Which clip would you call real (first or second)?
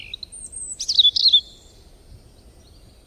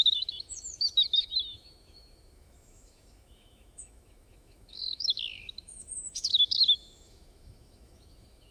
first